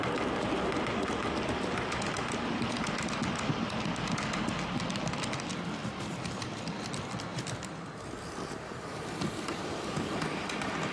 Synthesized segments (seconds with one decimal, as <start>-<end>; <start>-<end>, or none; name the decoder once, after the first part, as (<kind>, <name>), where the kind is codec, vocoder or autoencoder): 5.8-6.6 (vocoder, BigVGAN v2); 7.3-10.0

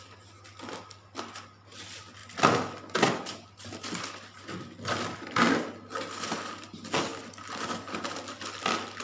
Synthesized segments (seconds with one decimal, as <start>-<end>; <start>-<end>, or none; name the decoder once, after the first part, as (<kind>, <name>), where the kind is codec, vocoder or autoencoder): none

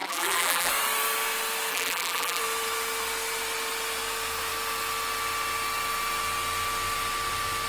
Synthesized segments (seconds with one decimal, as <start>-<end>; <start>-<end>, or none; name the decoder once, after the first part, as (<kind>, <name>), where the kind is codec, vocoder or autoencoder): 0.0-0.7 (vocoder, BigVGAN v2); 1.7-2.4